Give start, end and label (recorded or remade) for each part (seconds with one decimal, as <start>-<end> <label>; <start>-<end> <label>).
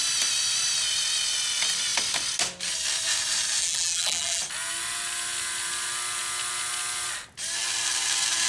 0.0-3.6 recorded; 3.6-4.4 remade; 4.4-8.5 recorded